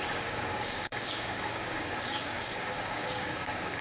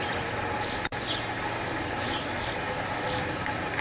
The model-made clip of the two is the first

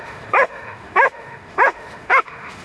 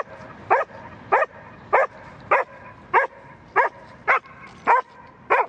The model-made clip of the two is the first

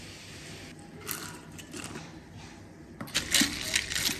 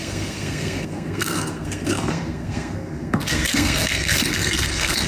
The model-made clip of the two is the second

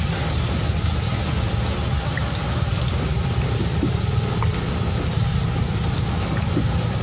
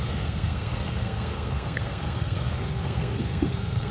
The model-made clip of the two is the second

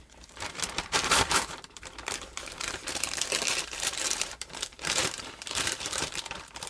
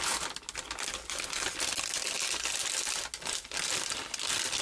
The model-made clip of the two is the first